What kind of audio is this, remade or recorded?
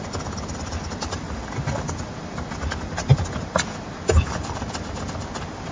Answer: recorded